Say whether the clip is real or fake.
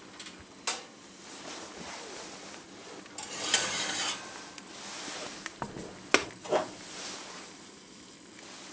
real